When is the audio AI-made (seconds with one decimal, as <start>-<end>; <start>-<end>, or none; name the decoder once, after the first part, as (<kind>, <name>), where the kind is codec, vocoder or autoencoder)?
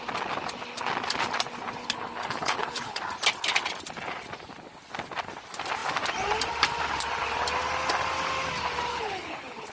1.8-3.0 (codec, HILCodec); 8.9-9.7